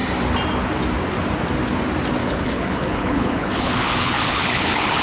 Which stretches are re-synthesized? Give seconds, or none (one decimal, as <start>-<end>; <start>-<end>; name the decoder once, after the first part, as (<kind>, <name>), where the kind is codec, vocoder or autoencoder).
2.2-5.0 (codec, HILCodec)